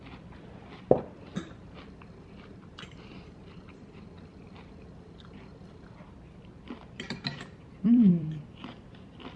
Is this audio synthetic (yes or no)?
yes